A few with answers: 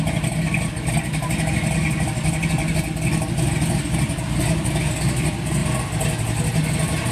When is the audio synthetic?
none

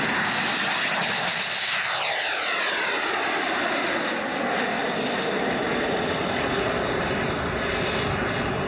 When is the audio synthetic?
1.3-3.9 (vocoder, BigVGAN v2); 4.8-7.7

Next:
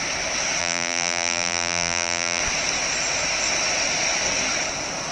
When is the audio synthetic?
0.6-2.4 (vocoder, BigVGAN v2)

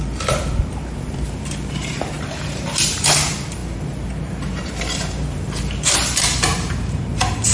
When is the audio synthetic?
0.0-7.5 (vocoder, BigVGAN v2)

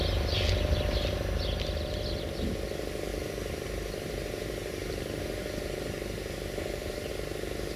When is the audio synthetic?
3.1-7.1 (vocoder, BigVGAN v2)